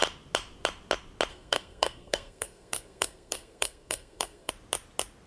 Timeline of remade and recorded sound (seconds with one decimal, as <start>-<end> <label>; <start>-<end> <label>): 0.0-1.3 recorded; 1.3-4.5 remade; 4.5-5.3 recorded